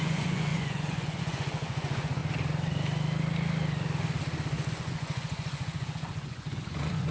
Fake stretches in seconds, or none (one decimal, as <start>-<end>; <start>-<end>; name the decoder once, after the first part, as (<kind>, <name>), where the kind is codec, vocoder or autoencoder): 0.0-2.2 (vocoder, Vocos); 4.7-7.1